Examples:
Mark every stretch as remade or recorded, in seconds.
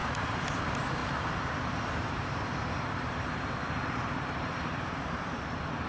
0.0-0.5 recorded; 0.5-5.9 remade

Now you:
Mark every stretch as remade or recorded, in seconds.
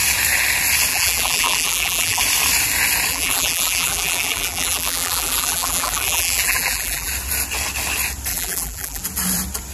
0.0-0.9 recorded; 0.9-2.2 remade; 2.2-3.1 recorded; 3.1-7.1 remade; 7.1-8.3 recorded; 8.3-9.0 remade; 9.0-9.7 recorded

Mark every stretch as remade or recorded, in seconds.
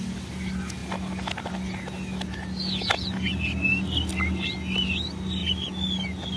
0.0-6.4 recorded